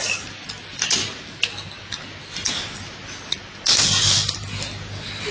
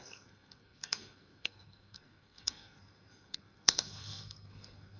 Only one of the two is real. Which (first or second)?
first